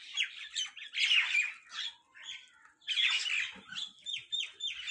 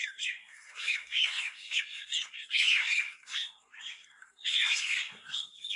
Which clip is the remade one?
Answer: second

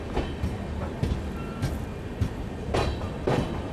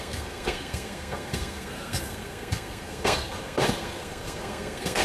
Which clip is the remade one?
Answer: second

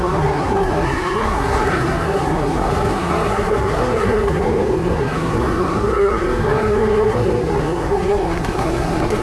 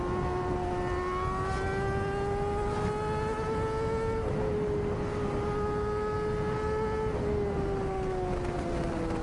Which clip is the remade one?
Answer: first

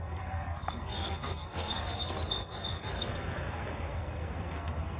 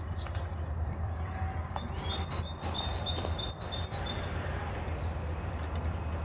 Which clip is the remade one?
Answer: first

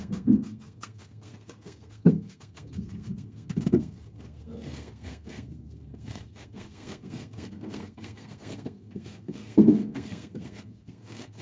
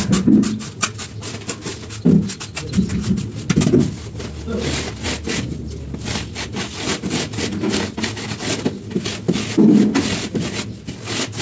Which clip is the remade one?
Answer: first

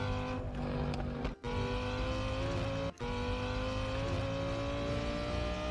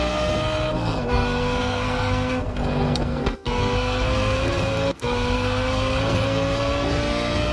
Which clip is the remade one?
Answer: second